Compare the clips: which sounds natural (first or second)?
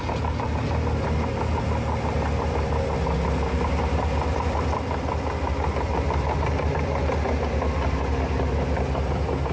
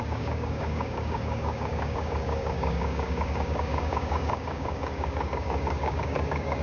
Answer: first